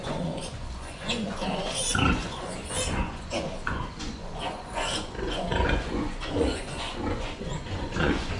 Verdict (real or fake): fake